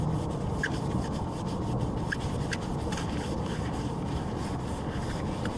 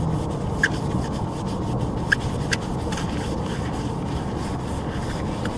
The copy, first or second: first